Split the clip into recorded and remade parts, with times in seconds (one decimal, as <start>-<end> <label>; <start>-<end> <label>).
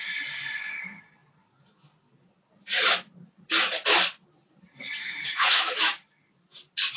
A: 0.0-5.0 recorded; 5.0-5.9 remade; 5.9-7.0 recorded